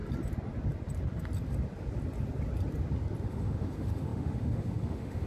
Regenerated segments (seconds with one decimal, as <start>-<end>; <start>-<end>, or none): 3.2-5.3